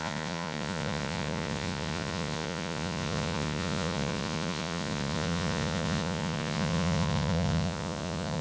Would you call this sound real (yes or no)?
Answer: no